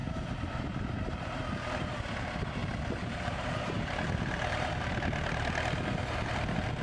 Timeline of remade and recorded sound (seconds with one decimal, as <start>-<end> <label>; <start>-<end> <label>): 0.0-1.1 remade; 1.1-2.6 recorded; 2.6-4.8 remade; 4.8-6.8 recorded